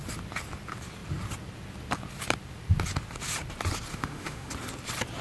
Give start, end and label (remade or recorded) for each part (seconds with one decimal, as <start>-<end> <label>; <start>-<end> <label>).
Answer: 0.0-3.9 recorded; 3.9-4.5 remade; 4.5-5.2 recorded